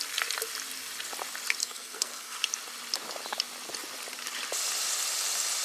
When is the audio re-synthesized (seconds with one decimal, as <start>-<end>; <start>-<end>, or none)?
1.6-2.4